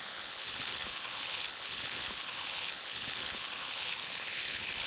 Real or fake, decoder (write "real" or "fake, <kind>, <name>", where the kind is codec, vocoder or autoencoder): fake, codec, HILCodec